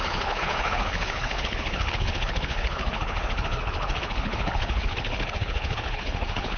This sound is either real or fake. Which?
fake